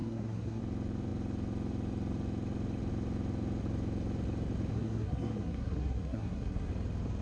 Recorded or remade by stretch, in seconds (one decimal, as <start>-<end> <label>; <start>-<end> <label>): 0.0-0.6 remade; 0.6-4.7 recorded; 4.7-6.7 remade; 6.7-7.2 recorded